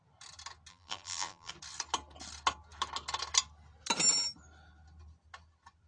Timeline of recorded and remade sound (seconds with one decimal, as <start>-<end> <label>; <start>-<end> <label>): 0.0-0.7 recorded; 0.7-1.5 remade; 1.5-5.9 recorded